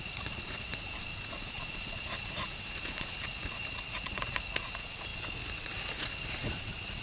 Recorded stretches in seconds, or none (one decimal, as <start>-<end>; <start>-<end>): none